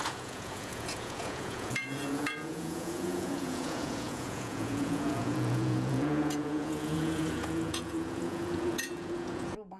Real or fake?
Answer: fake